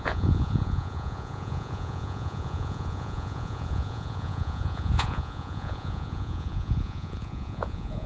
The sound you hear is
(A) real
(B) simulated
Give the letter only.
B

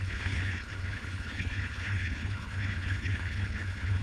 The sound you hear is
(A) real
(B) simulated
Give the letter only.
B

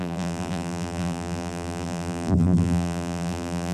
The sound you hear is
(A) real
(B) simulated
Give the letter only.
B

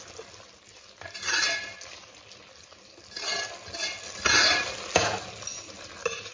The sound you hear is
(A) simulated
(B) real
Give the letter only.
B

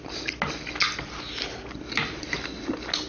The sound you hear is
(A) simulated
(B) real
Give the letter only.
B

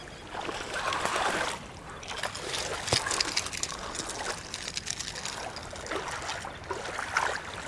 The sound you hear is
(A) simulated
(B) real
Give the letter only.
B